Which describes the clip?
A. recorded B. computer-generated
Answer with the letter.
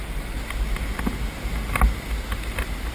A